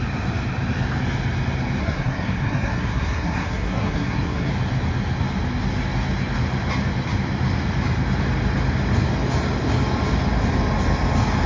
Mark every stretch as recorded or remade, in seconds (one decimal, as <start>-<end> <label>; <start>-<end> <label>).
0.0-1.8 recorded; 1.8-4.5 remade; 4.5-11.5 recorded